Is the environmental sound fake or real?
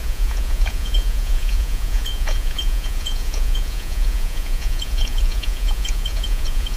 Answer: fake